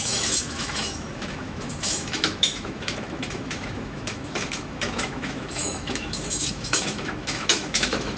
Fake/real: fake